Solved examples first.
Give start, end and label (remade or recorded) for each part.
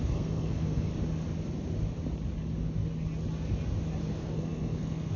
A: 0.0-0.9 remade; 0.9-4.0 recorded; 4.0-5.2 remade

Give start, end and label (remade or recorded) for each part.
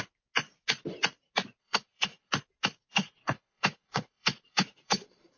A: 0.0-1.6 recorded; 1.6-2.3 remade; 2.3-2.9 recorded; 2.9-5.4 remade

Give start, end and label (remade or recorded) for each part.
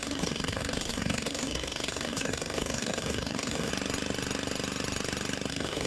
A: 0.0-3.7 remade; 3.7-5.5 recorded; 5.5-5.9 remade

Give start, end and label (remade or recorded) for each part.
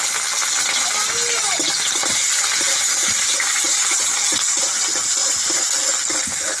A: 0.0-6.6 recorded